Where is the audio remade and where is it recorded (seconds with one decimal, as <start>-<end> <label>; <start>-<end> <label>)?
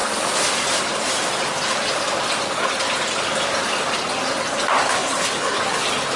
0.0-4.9 recorded; 4.9-5.6 remade; 5.6-6.2 recorded